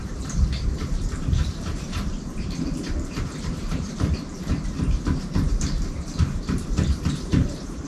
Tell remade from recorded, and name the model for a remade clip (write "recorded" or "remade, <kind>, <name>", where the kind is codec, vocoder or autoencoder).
remade, vocoder, BigVGAN v2